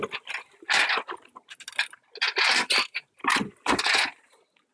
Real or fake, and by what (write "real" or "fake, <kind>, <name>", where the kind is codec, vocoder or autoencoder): real